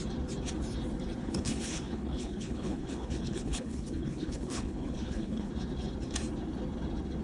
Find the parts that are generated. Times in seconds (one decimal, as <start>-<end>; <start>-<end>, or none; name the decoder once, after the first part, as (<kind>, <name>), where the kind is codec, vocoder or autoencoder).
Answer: 1.2-5.5 (codec, HILCodec)